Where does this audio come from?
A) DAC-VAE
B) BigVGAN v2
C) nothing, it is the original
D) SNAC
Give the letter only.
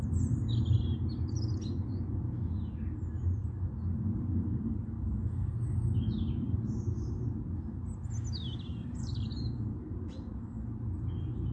C